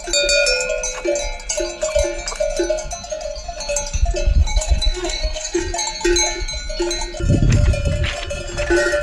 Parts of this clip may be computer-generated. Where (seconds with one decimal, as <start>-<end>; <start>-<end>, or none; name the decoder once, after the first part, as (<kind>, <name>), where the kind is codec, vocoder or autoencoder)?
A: 4.4-5.6 (codec, SNAC)